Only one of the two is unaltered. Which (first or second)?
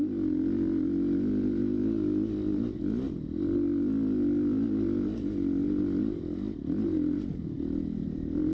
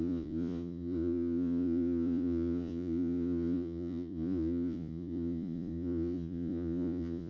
first